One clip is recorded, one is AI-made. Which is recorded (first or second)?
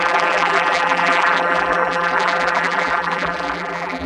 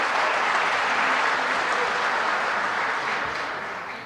second